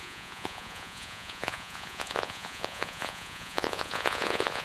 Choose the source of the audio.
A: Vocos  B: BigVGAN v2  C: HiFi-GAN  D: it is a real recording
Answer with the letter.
A